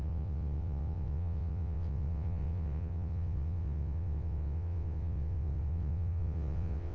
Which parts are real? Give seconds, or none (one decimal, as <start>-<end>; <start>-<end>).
none